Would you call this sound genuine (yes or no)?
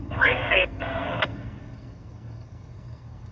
no